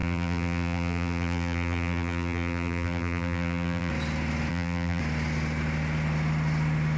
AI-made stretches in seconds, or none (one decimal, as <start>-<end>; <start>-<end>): 0.0-3.9; 4.5-5.0